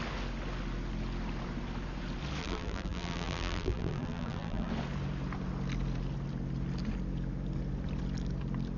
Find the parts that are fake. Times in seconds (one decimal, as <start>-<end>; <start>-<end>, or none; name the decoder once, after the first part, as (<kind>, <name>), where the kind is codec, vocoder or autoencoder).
2.4-4.7 (vocoder, BigVGAN v2)